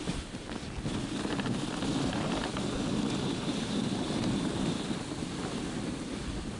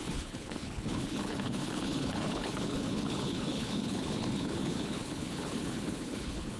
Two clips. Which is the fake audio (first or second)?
second